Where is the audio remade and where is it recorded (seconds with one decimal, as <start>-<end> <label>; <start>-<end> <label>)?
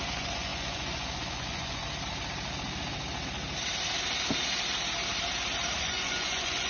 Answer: 0.0-1.8 remade; 1.8-5.8 recorded; 5.8-6.7 remade